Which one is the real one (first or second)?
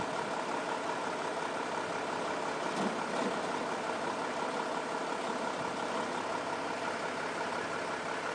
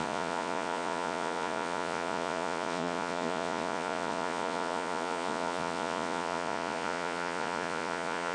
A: first